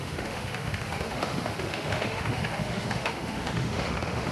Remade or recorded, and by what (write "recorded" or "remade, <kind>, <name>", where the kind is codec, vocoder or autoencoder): remade, autoencoder, DAC-VAE